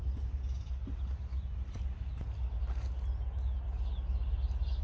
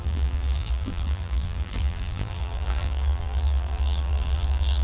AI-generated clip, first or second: second